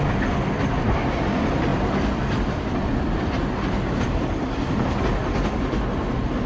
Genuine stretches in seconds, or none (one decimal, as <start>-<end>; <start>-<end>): 0.0-6.5